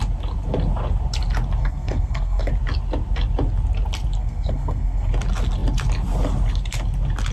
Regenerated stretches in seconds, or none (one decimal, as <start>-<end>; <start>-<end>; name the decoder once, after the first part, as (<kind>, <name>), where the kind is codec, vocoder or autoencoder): 1.6-2.5 (codec, SNAC); 4.2-5.1